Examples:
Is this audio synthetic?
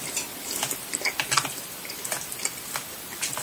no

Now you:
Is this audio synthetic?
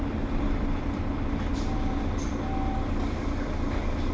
yes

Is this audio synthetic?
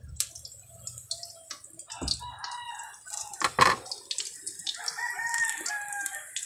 no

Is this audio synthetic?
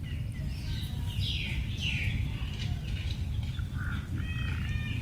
no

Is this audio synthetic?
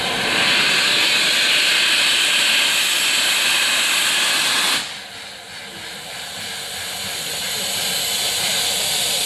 no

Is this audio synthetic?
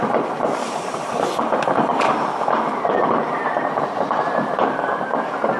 yes